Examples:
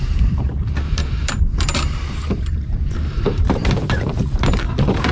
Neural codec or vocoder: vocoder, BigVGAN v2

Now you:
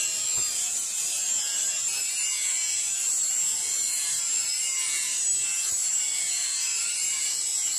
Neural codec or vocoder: vocoder, BigVGAN v2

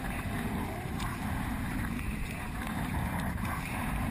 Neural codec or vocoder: vocoder, BigVGAN v2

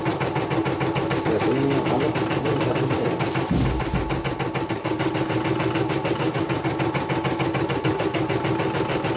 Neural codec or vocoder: none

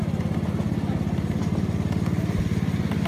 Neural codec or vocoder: none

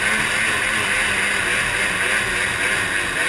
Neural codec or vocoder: none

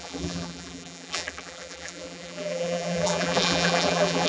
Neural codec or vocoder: vocoder, BigVGAN v2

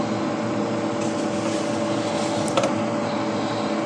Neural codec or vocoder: none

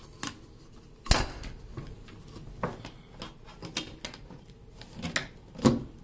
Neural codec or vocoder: none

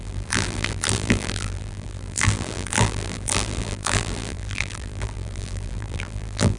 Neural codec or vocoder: vocoder, BigVGAN v2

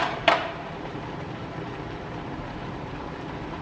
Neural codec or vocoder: vocoder, BigVGAN v2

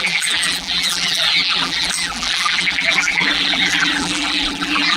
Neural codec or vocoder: vocoder, BigVGAN v2